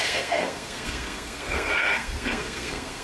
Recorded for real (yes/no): no